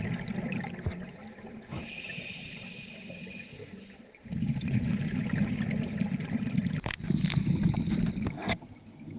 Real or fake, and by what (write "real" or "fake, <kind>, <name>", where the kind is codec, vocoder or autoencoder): real